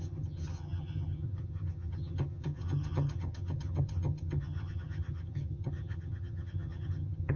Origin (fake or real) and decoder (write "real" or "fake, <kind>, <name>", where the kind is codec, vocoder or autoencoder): fake, vocoder, HiFi-GAN